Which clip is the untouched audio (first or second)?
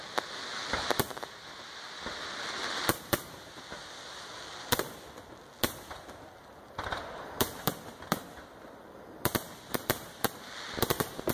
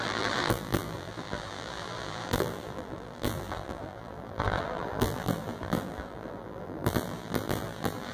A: first